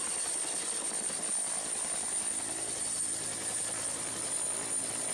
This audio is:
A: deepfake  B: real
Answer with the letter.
B